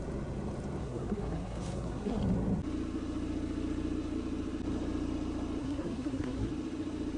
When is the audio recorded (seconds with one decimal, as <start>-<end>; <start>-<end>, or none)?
0.0-0.8; 2.2-5.6; 6.5-7.2